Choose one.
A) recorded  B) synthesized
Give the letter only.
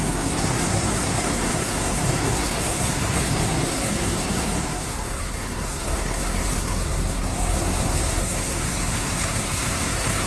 B